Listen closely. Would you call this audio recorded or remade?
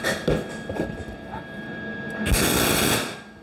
recorded